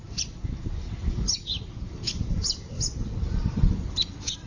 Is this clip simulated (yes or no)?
no